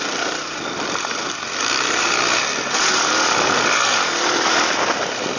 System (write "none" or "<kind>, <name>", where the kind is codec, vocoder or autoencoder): none